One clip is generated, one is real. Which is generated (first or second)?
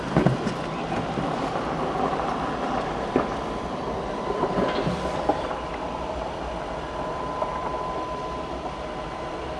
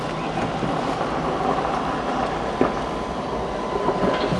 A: first